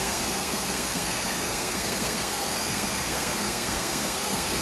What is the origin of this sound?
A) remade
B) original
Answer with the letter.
A